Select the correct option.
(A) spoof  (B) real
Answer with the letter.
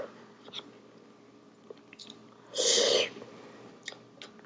B